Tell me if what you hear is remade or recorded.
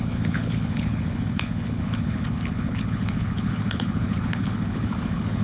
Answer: remade